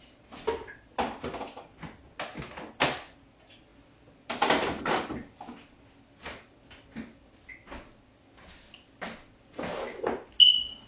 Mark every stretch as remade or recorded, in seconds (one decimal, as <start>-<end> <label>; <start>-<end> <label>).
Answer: 0.0-10.9 recorded